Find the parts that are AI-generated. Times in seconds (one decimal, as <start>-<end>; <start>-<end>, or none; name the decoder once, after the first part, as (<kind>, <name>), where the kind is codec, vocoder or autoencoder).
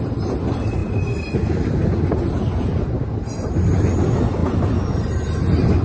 none